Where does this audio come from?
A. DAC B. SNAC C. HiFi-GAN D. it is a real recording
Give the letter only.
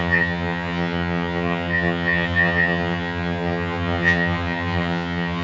C